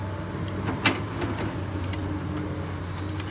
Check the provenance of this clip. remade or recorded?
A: recorded